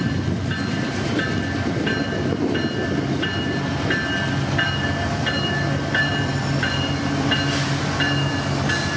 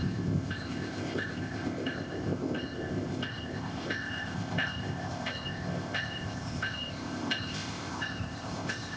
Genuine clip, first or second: first